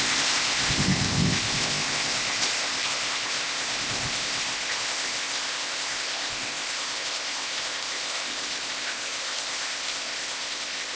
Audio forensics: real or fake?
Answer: fake